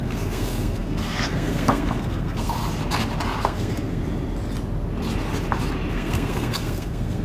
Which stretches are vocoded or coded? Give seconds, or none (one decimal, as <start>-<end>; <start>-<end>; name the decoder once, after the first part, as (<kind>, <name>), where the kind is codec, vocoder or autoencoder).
0.0-2.6 (codec, SNAC); 3.4-4.0; 5.9-7.2